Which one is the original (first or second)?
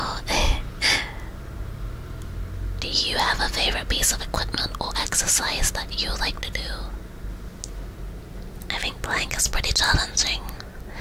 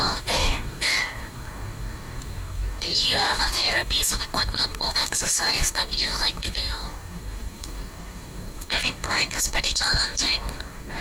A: first